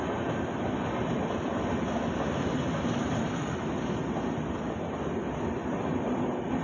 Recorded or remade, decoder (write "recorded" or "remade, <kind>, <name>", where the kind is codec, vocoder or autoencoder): recorded